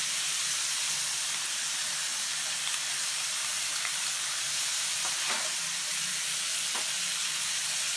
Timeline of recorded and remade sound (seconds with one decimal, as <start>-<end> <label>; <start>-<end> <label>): 0.0-6.5 remade; 6.5-8.0 recorded